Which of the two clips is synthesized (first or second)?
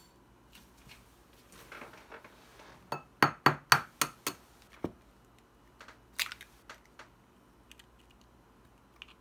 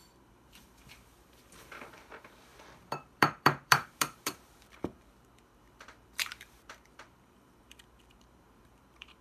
second